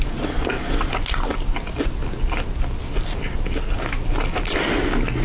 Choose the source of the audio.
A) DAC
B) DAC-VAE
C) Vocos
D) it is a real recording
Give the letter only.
D